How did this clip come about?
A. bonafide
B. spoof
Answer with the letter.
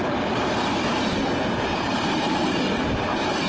A